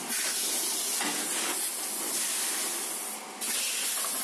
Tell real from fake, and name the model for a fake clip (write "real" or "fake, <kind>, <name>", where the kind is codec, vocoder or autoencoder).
real